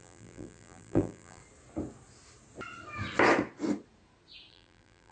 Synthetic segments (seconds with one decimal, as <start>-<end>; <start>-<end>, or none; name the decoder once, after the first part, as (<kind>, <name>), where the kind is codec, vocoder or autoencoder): 0.0-1.4 (vocoder, BigVGAN v2); 4.5-5.1

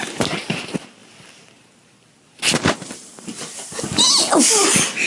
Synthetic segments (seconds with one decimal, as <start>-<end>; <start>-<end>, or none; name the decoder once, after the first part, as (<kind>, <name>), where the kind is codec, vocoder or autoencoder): none

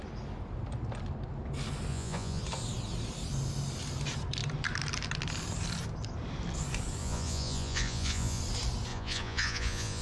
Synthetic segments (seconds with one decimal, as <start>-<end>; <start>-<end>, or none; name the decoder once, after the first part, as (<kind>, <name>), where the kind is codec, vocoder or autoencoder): 1.9-2.4 (vocoder, Vocos); 7.0-8.4; 8.9-10.0

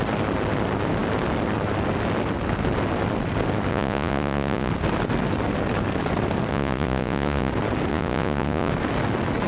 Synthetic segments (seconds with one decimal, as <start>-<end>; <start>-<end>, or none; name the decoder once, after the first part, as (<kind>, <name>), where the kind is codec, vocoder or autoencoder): 3.7-4.7 (vocoder, Vocos); 6.5-7.5; 7.9-8.7

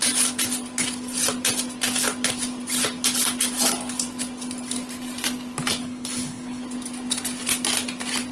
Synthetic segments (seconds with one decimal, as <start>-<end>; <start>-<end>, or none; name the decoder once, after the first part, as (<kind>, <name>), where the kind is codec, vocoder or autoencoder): 5.8-6.6 (codec, HILCodec)

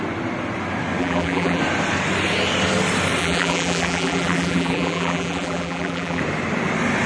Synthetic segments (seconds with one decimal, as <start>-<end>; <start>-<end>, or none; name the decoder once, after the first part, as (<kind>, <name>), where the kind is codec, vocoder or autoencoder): 1.0-1.6 (vocoder, BigVGAN v2); 3.2-6.2

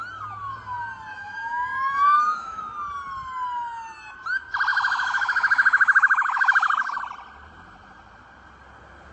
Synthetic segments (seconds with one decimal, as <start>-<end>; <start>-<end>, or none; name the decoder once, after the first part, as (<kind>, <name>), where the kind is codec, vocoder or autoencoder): 1.1-2.6 (autoencoder, DAC-VAE); 4.7-7.0

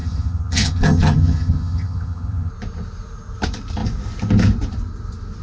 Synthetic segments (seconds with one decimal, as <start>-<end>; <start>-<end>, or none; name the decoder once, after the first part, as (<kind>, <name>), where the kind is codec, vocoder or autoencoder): 0.0-2.5 (vocoder, HiFi-GAN)